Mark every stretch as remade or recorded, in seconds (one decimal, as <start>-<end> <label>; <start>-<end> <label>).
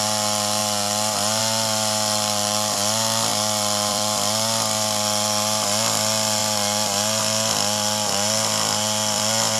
0.0-0.6 remade; 0.6-1.4 recorded; 1.4-6.4 remade; 6.4-7.2 recorded; 7.2-9.6 remade